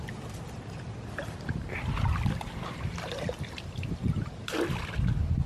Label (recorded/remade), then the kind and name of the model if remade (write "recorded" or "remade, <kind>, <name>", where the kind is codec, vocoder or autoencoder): recorded